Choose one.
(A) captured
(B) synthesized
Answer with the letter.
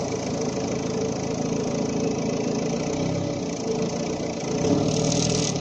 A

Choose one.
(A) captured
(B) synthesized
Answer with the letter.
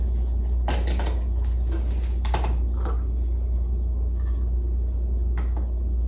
A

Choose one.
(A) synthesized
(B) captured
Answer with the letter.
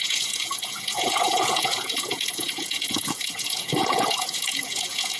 A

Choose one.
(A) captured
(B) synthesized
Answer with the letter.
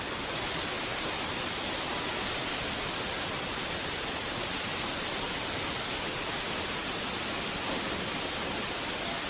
A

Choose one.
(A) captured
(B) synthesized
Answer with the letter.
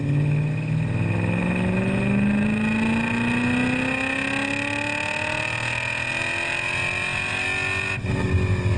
A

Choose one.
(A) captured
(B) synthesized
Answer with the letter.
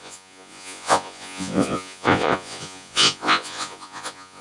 B